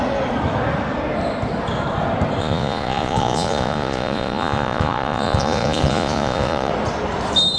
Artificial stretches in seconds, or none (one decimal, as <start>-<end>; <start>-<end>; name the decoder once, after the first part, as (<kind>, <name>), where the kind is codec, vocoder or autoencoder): 2.4-6.7 (vocoder, Vocos)